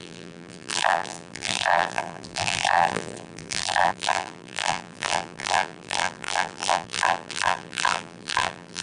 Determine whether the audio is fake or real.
fake